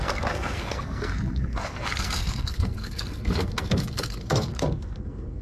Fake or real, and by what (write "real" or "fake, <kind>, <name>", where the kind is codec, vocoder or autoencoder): fake, codec, SNAC